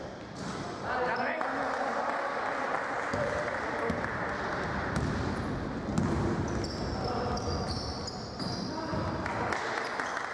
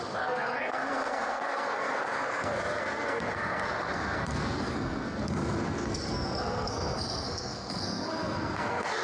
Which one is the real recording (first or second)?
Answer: first